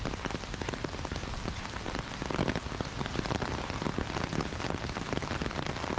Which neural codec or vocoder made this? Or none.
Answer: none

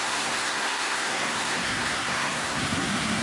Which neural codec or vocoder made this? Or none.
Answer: codec, SNAC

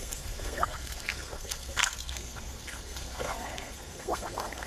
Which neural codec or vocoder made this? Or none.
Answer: codec, SNAC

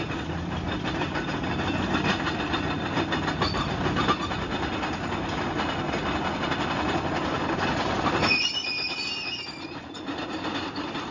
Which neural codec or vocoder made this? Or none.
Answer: none